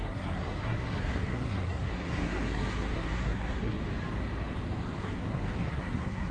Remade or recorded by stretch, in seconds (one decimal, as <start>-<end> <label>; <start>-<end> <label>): 0.0-3.8 remade; 3.8-5.0 recorded; 5.0-6.3 remade